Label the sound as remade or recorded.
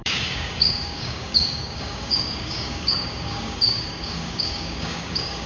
remade